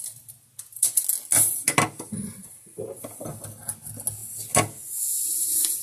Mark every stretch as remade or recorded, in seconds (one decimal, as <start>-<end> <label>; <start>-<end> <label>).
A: 0.0-5.8 recorded